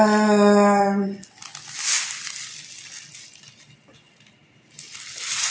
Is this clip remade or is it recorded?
recorded